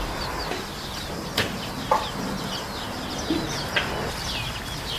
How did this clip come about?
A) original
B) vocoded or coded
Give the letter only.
A